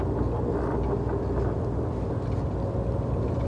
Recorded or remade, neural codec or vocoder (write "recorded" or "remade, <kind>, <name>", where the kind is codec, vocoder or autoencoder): recorded